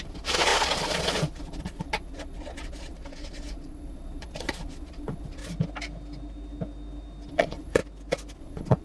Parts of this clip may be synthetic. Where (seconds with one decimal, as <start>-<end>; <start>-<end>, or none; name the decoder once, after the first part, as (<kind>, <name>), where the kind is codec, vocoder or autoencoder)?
0.0-5.4 (vocoder, Vocos); 7.3-7.8; 8.4-8.8